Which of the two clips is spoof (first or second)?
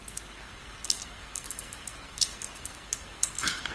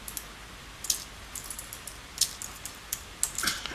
first